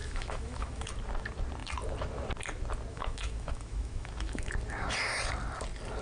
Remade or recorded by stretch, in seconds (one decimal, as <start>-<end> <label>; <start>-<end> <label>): 0.0-0.9 remade; 0.9-2.9 recorded; 2.9-4.6 remade; 4.6-6.0 recorded